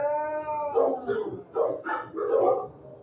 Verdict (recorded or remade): recorded